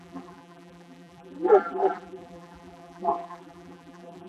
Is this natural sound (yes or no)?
no